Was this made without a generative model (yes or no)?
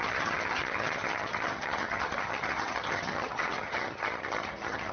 no